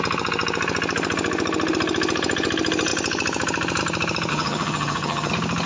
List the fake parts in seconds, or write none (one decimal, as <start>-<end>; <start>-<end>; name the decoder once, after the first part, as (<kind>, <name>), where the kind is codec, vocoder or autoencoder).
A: 4.3-5.3 (vocoder, HiFi-GAN)